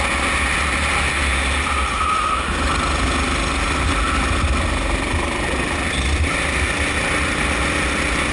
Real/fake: real